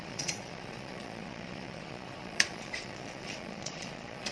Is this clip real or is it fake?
fake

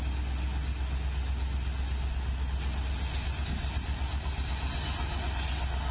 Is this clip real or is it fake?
real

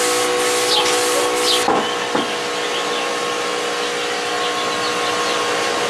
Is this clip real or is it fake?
real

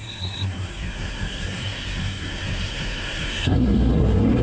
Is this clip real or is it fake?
fake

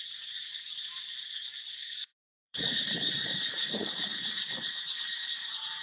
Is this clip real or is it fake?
fake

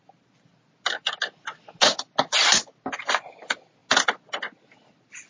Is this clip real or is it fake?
real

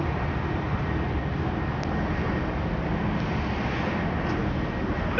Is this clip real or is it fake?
real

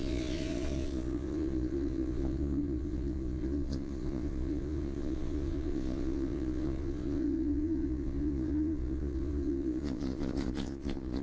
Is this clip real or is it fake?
fake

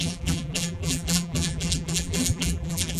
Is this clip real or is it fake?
fake